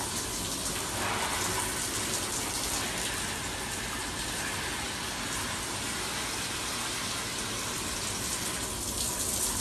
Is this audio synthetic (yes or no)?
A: no